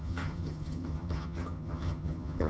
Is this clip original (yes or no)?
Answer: no